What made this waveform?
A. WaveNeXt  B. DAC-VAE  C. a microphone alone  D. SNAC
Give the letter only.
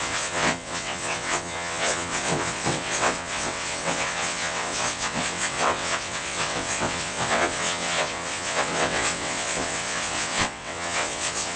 A